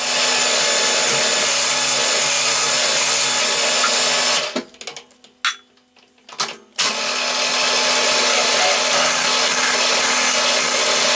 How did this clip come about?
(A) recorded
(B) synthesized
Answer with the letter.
A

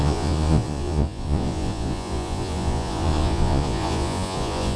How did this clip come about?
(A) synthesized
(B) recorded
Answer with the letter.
A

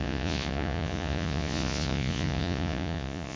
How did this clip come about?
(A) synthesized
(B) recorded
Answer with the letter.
A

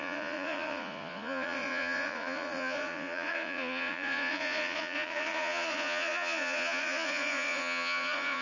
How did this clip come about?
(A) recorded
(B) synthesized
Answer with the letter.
B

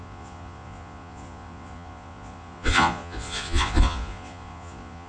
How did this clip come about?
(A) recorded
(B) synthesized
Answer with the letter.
B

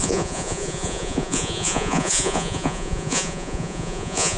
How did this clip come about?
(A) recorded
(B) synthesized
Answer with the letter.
B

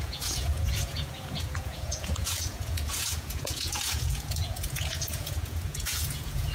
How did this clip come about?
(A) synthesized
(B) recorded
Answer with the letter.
A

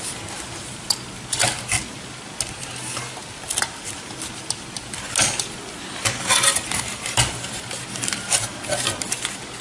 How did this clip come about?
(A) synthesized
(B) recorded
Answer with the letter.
B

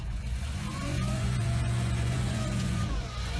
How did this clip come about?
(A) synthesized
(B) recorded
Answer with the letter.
A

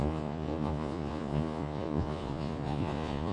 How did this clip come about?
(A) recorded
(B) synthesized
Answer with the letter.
B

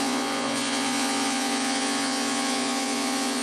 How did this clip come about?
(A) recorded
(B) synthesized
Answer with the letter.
B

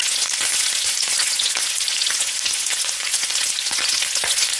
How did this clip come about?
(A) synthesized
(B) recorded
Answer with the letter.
A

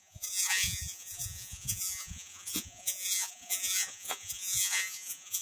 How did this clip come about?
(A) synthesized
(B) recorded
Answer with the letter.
A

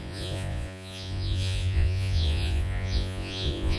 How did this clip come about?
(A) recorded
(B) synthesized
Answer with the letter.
B